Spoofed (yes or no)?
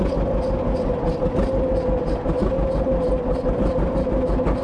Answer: no